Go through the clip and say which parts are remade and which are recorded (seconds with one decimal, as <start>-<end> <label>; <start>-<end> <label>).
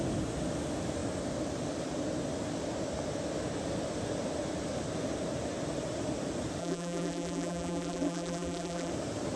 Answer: 0.0-6.6 recorded; 6.6-8.9 remade; 8.9-9.4 recorded